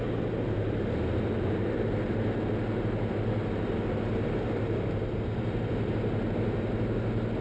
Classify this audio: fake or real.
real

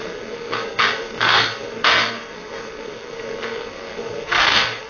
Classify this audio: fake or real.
fake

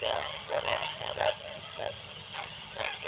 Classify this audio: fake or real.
fake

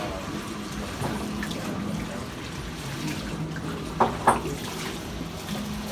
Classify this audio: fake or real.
real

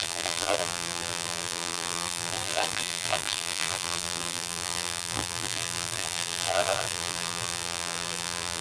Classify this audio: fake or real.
fake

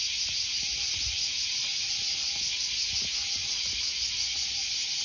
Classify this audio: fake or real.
real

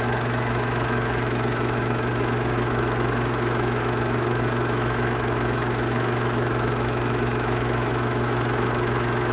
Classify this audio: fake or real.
fake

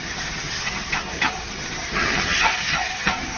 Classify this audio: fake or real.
fake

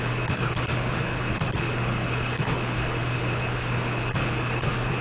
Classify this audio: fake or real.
fake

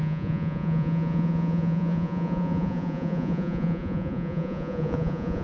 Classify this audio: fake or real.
fake